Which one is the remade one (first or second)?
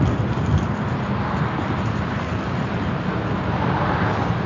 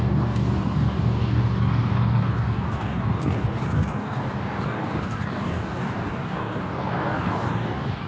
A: second